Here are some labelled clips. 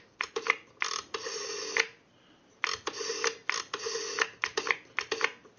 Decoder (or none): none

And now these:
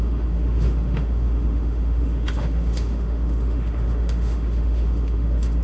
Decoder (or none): autoencoder, DAC-VAE